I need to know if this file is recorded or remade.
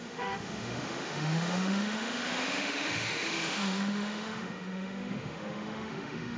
remade